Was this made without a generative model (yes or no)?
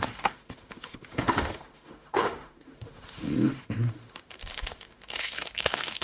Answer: no